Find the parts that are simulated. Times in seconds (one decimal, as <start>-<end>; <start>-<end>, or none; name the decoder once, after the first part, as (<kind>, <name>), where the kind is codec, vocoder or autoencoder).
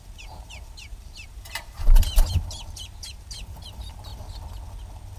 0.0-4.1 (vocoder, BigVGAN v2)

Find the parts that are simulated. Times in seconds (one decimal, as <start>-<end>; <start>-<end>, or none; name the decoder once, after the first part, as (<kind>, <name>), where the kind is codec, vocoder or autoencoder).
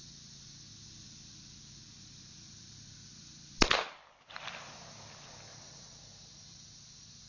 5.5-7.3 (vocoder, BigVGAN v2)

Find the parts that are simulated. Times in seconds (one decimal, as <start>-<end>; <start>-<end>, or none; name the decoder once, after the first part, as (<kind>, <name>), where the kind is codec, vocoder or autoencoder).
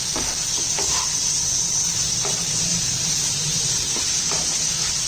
2.7-4.0 (vocoder, BigVGAN v2)